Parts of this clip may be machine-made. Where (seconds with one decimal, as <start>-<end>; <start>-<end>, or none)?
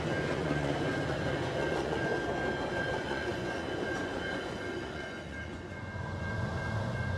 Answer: 0.0-2.1; 2.7-7.2